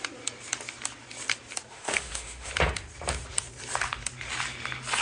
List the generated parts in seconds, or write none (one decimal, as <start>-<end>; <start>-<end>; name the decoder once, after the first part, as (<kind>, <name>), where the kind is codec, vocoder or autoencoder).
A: 1.7-2.5 (autoencoder, DAC-VAE)